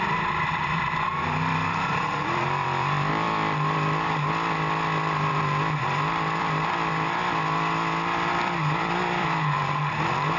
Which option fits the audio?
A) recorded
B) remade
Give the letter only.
B